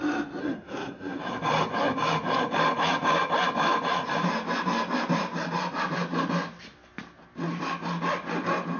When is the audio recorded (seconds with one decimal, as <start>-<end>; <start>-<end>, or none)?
0.0-0.4; 1.2-8.8